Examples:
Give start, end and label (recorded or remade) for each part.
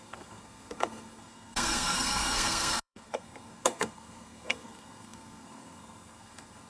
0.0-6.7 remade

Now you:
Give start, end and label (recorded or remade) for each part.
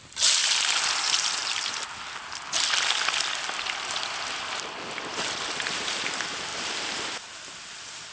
0.0-0.4 recorded; 0.4-1.0 remade; 1.0-5.1 recorded; 5.1-6.0 remade; 6.0-8.1 recorded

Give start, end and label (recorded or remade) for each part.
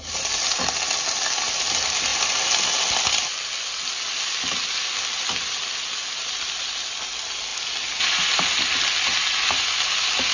0.0-10.3 recorded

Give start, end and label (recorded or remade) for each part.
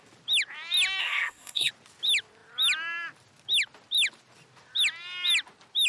0.0-1.0 recorded; 1.0-1.7 remade; 1.7-5.9 recorded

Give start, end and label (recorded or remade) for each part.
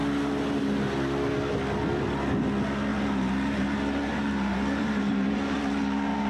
0.0-2.9 recorded; 2.9-6.3 remade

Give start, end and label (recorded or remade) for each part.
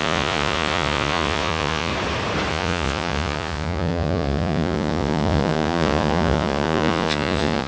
0.0-1.9 remade; 1.9-2.5 recorded; 2.5-7.7 remade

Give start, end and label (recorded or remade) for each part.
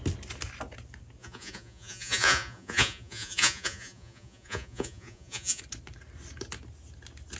0.0-1.2 recorded; 1.2-5.6 remade; 5.6-7.4 recorded